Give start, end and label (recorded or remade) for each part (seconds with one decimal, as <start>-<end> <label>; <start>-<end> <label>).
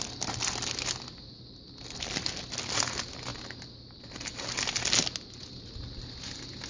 0.0-6.7 recorded